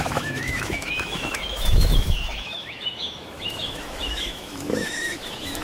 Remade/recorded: remade